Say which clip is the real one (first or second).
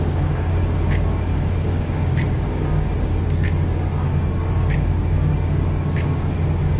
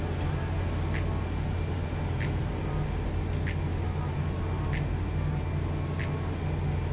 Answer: second